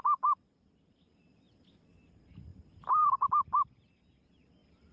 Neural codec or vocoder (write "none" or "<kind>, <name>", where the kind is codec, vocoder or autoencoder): none